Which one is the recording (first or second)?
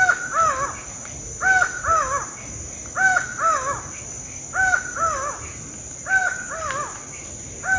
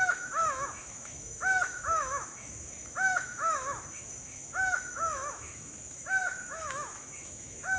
first